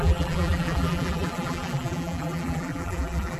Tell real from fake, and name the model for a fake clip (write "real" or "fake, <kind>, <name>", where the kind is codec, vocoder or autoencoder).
fake, vocoder, BigVGAN v2